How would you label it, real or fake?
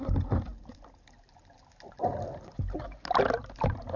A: real